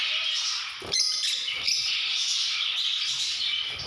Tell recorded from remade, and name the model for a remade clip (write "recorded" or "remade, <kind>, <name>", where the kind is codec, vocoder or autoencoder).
recorded